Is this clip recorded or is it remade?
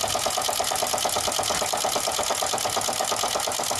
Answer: recorded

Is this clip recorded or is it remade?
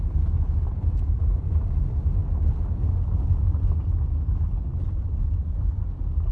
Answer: recorded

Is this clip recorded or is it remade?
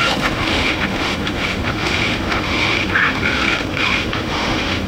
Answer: remade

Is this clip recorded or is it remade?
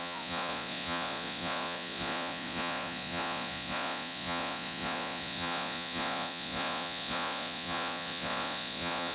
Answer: remade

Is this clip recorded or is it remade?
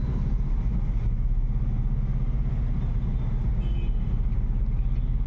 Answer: recorded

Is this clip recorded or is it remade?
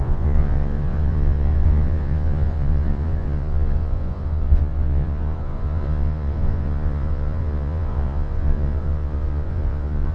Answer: remade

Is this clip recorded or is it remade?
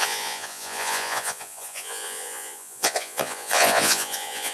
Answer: remade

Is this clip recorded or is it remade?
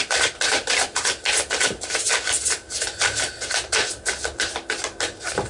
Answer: recorded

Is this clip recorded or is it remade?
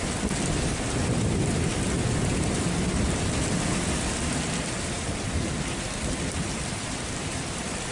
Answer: remade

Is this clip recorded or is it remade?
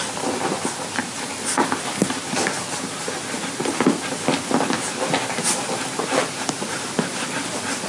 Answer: remade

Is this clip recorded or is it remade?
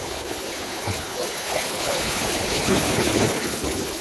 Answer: remade